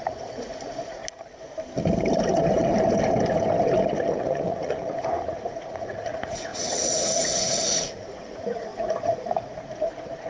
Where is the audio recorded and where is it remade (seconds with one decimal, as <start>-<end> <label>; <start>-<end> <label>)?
0.0-1.0 remade; 1.0-4.1 recorded; 4.1-10.3 remade